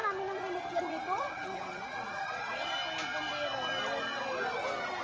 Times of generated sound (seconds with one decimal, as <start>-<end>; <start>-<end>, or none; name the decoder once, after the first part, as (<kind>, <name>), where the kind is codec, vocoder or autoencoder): 0.9-2.7 (vocoder, WaveNeXt)